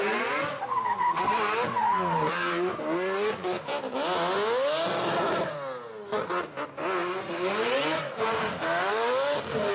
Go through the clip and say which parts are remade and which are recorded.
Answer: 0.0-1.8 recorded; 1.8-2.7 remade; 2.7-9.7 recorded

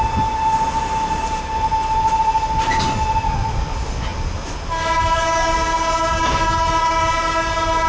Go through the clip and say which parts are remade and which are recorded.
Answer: 0.0-7.9 recorded

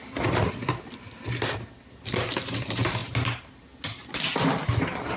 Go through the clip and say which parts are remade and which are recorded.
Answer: 0.0-5.2 recorded

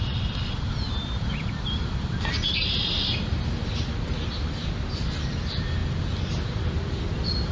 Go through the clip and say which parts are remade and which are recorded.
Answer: 0.0-7.5 recorded

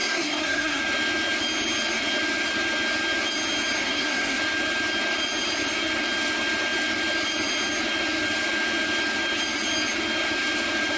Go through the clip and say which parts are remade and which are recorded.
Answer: 0.0-0.8 remade; 0.8-3.8 recorded; 3.8-4.4 remade; 4.4-11.0 recorded

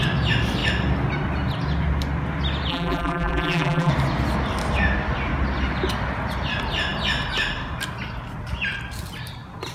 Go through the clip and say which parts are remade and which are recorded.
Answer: 0.0-2.7 recorded; 2.7-3.9 remade; 3.9-9.7 recorded

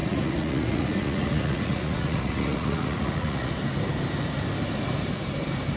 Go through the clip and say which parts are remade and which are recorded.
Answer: 0.0-3.5 remade; 3.5-5.8 recorded

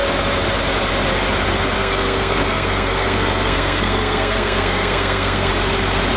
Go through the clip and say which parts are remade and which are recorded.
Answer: 0.0-1.8 recorded; 1.8-5.5 remade; 5.5-6.2 recorded